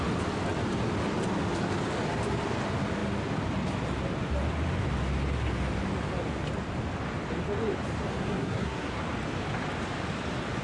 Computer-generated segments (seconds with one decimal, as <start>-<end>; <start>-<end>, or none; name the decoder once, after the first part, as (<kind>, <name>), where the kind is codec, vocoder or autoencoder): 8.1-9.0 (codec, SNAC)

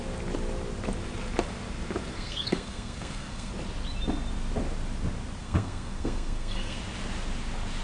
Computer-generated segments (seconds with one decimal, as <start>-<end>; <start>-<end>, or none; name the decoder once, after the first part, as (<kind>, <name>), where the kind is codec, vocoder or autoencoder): 2.1-3.5 (codec, SNAC); 5.4-6.8

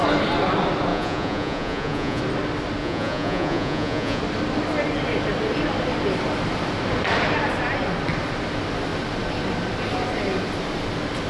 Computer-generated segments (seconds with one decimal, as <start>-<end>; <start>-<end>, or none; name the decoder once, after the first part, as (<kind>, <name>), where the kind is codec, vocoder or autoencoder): 0.9-2.2 (vocoder, Vocos); 2.8-4.2

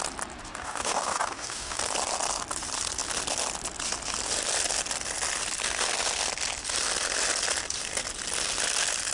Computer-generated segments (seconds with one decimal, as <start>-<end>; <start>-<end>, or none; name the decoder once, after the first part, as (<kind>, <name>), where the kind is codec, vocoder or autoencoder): 0.4-1.8 (codec, DAC)